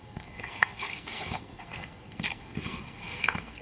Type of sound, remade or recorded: remade